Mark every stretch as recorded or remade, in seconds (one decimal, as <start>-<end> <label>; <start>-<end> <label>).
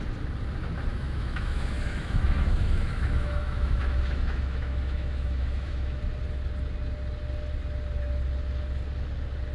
0.0-0.9 recorded; 0.9-6.0 remade; 6.0-9.5 recorded